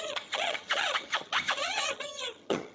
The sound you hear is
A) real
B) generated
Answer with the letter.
B